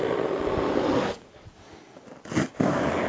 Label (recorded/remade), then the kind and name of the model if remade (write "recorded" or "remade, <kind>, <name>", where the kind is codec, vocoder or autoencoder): recorded